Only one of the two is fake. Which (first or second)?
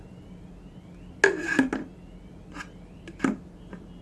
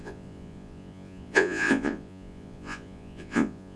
second